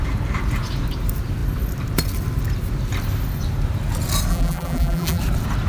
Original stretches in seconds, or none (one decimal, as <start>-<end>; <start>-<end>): 0.0-4.3; 5.2-5.7